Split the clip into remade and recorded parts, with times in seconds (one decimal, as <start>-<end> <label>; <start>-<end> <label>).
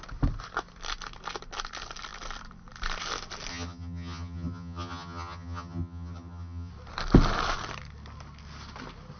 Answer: 0.0-3.5 recorded; 3.5-6.7 remade; 6.7-9.2 recorded